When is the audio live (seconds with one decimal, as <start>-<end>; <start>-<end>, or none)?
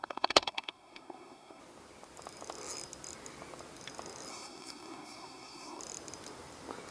1.6-4.3; 5.8-6.9